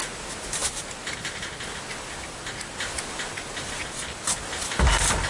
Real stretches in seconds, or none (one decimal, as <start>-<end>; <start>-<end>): 0.0-5.3